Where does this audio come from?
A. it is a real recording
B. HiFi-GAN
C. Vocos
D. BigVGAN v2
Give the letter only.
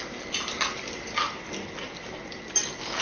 A